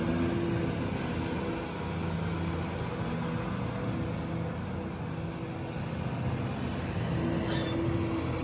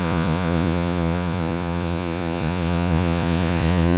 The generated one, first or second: second